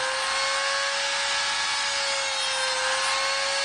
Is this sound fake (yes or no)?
no